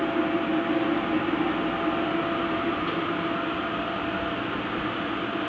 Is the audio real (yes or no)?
yes